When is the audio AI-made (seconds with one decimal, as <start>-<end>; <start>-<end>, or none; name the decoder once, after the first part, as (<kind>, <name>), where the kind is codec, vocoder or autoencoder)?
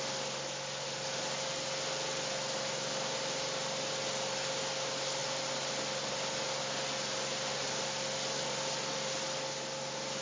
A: none